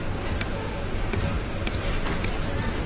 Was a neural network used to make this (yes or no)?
no